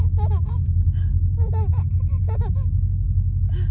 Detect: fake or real real